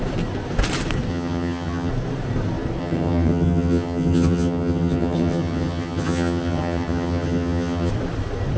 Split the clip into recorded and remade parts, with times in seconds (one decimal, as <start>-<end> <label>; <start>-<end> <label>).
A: 0.0-1.1 recorded; 1.1-1.9 remade; 1.9-2.8 recorded; 2.8-7.9 remade; 7.9-8.6 recorded